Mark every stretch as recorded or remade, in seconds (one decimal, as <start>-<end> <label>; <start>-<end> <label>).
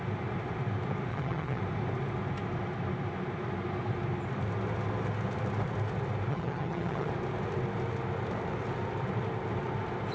0.0-1.1 recorded; 1.1-1.6 remade; 1.6-6.3 recorded; 6.3-7.1 remade; 7.1-10.1 recorded